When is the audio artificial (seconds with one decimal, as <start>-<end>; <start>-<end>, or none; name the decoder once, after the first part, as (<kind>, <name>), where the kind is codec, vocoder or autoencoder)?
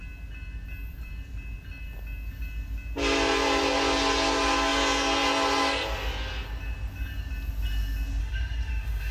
8.2-9.1 (autoencoder, DAC-VAE)